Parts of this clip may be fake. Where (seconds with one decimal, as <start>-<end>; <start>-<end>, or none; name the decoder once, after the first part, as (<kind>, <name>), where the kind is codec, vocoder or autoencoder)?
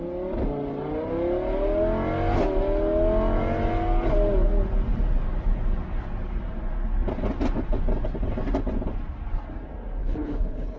10.0-10.8 (codec, HILCodec)